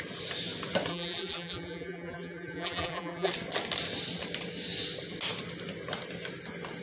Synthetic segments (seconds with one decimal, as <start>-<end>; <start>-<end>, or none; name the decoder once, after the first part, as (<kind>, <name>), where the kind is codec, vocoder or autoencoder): 0.9-3.3 (vocoder, BigVGAN v2)